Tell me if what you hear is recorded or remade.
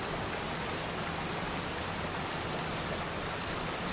recorded